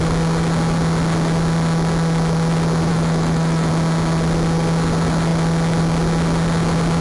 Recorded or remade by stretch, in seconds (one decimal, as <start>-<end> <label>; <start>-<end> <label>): 0.0-2.9 recorded; 2.9-3.7 remade; 3.7-7.0 recorded